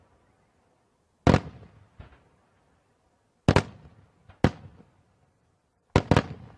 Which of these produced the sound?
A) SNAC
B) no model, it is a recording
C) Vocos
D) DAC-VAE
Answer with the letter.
B